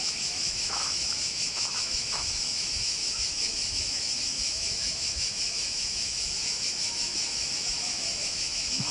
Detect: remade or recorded remade